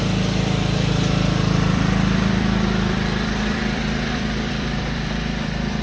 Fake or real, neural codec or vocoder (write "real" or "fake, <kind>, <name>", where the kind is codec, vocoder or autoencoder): fake, vocoder, BigVGAN v2